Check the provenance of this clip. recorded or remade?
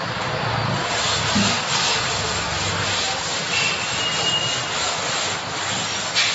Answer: recorded